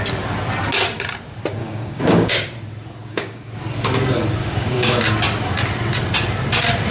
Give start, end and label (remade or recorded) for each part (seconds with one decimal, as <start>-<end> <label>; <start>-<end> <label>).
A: 0.0-1.6 recorded; 1.6-2.3 remade; 2.3-3.0 recorded; 3.0-3.5 remade; 3.5-4.4 recorded; 4.4-5.0 remade; 5.0-6.9 recorded